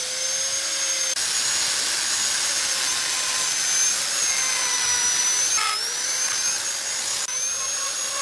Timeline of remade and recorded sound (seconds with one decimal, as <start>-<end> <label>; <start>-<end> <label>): 0.0-8.2 recorded